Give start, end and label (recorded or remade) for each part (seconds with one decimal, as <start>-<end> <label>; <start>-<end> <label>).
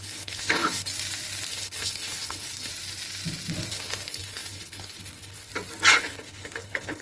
0.0-0.9 remade; 0.9-1.5 recorded; 1.5-2.7 remade; 2.7-3.7 recorded; 3.7-5.5 remade; 5.5-6.0 recorded; 6.0-7.0 remade